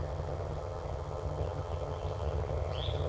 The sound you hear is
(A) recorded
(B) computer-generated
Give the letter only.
B